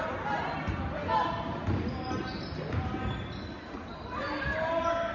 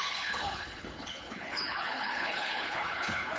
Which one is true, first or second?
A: first